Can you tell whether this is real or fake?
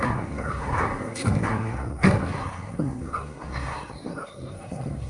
fake